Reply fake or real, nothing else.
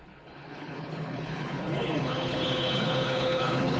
fake